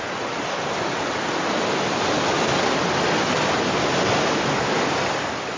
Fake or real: real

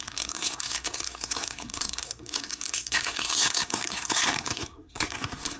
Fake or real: fake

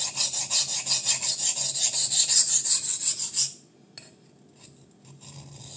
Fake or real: real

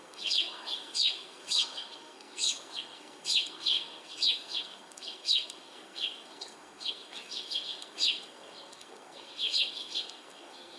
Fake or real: fake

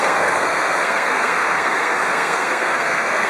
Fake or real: fake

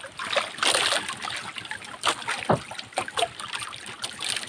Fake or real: real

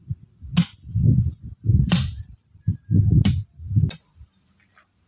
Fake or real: real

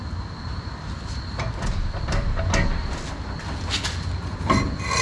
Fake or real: real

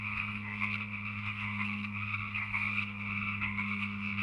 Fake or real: fake